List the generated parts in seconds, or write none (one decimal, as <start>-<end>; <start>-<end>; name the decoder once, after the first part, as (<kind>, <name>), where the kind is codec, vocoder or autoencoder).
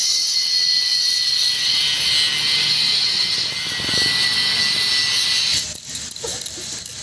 0.0-1.8 (vocoder, WaveNeXt)